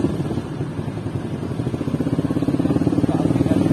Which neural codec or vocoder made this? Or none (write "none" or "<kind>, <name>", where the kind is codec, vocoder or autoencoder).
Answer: none